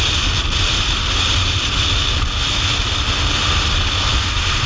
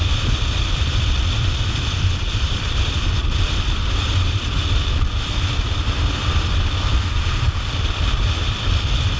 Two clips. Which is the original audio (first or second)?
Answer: first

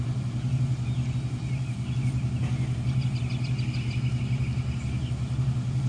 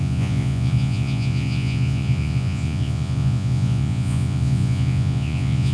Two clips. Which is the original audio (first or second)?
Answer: first